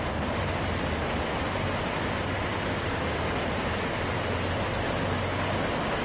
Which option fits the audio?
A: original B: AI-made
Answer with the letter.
A